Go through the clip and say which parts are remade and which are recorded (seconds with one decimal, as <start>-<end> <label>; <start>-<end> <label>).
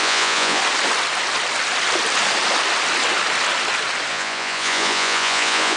0.0-0.6 remade; 0.6-4.1 recorded; 4.1-5.8 remade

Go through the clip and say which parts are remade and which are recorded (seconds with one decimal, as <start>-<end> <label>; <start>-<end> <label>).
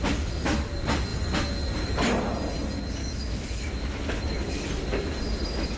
0.0-3.0 recorded; 3.0-4.6 remade; 4.6-5.8 recorded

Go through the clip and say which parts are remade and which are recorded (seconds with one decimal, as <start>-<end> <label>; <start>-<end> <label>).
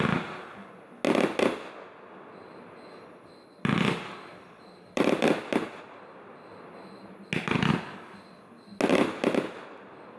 0.0-4.3 recorded; 4.3-5.3 remade; 5.3-10.2 recorded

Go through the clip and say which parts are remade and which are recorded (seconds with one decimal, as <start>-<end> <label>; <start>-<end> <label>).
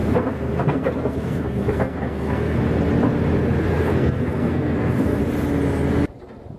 0.0-2.6 remade; 2.6-3.7 recorded; 3.7-5.2 remade; 5.2-6.6 recorded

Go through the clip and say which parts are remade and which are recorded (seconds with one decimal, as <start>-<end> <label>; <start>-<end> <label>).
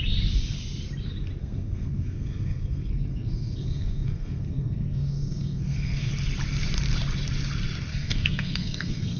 0.0-1.4 recorded; 1.4-6.1 remade; 6.1-7.9 recorded; 7.9-9.2 remade